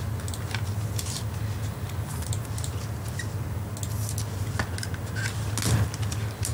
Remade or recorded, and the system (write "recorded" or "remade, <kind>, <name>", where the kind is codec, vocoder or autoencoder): recorded